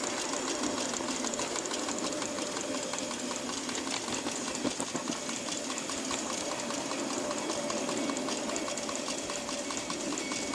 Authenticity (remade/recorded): recorded